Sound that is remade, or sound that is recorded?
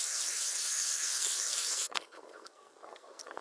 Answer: remade